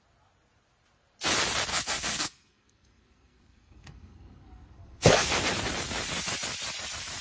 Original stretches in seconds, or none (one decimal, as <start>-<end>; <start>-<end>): 0.0-1.7; 5.4-7.2